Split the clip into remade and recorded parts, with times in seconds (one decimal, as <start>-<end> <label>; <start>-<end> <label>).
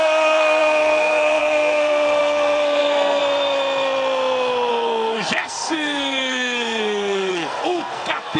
0.0-3.2 remade; 3.2-4.7 recorded; 4.7-8.4 remade